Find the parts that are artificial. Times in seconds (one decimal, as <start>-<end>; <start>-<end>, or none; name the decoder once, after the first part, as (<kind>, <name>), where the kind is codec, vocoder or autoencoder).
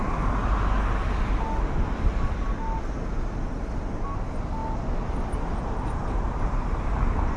none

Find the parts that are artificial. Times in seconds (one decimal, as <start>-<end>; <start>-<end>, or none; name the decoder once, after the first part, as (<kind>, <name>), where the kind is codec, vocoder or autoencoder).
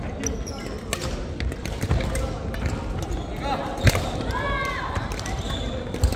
none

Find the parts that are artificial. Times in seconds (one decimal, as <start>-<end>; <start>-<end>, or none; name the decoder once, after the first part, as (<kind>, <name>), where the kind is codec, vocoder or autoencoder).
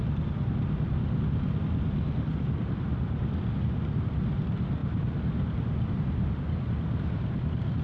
none